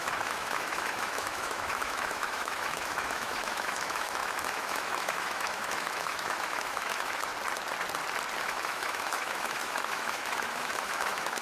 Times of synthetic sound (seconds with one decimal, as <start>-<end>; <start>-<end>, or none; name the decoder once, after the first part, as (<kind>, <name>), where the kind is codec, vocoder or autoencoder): 0.0-7.3 (autoencoder, DAC-VAE); 8.4-11.4